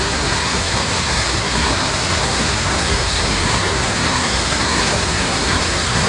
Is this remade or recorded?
remade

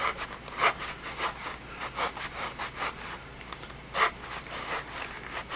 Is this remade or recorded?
recorded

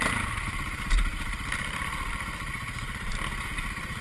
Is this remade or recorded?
remade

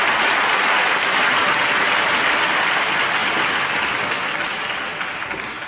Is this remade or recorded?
recorded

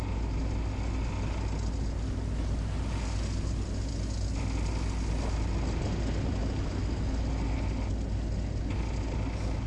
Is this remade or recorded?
recorded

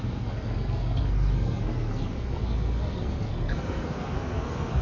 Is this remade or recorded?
remade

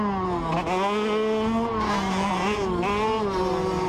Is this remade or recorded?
recorded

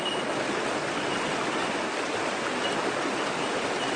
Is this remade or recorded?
recorded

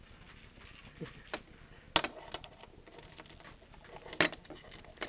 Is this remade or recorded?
recorded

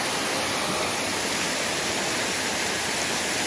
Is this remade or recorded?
recorded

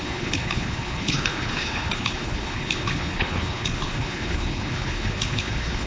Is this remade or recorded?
remade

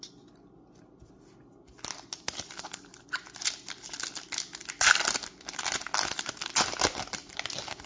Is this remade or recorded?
recorded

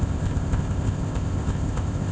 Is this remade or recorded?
remade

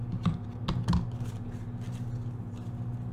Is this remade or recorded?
recorded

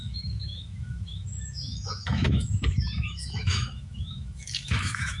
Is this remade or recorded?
remade